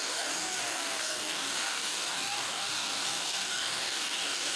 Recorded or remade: remade